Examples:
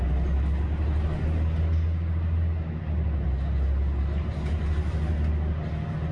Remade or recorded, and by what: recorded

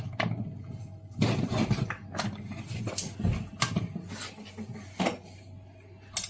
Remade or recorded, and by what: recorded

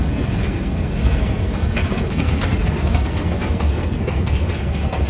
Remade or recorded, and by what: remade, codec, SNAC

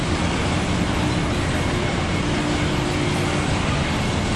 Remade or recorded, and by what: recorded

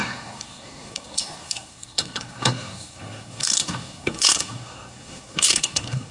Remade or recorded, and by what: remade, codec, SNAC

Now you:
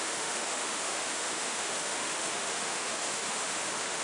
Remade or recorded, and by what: remade, autoencoder, DAC-VAE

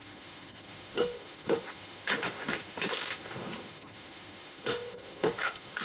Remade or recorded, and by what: remade, autoencoder, DAC-VAE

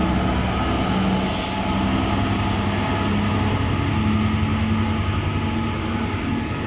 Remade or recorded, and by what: recorded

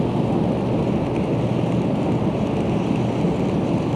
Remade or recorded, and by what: recorded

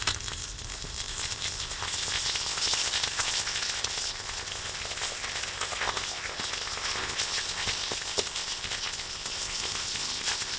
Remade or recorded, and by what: remade, codec, ZipCodec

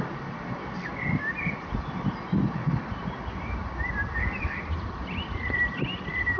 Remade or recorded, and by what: remade, vocoder, BigVGAN v2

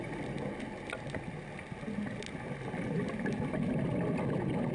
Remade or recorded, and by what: recorded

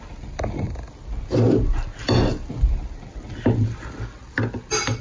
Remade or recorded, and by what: recorded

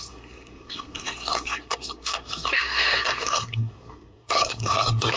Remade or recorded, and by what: remade, codec, SNAC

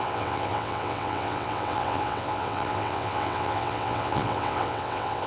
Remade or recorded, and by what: remade, vocoder, WaveNeXt